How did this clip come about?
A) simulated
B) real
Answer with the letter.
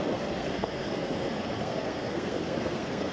A